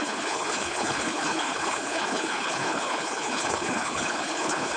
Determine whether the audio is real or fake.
fake